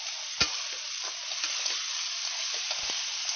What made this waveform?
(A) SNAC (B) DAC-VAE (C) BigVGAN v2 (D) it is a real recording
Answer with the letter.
D